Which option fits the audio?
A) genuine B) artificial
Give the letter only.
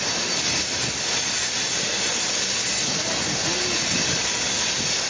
A